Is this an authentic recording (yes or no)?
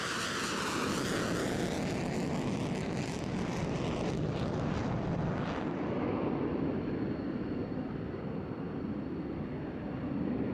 yes